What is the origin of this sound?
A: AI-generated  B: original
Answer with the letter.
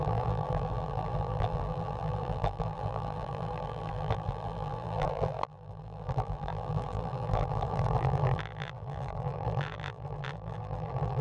A